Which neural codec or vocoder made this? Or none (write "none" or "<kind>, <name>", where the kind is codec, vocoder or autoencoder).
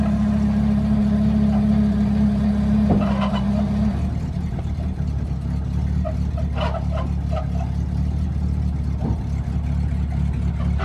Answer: none